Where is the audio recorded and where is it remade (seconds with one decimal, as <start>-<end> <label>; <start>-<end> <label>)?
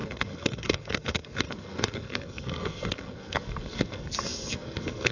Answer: 0.0-5.1 remade